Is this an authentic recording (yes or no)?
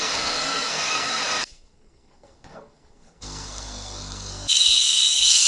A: no